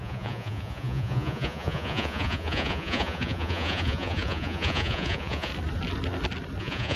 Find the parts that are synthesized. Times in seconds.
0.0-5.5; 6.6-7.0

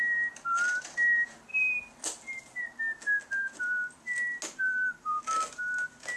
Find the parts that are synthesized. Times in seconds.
none

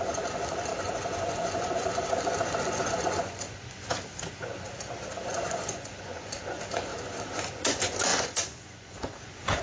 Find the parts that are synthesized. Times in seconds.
0.0-3.9; 5.3-9.6